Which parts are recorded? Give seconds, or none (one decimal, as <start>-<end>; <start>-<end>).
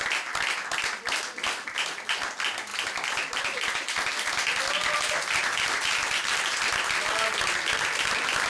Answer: 0.0-8.5